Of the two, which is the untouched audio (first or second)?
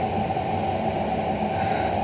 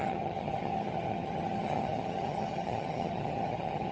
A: first